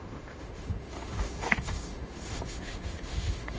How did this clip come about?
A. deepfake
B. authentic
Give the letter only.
A